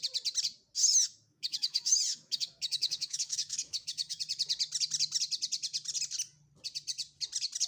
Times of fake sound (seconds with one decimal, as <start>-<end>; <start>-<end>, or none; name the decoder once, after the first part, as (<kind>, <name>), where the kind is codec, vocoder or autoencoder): 0.8-4.2 (autoencoder, DAC-VAE)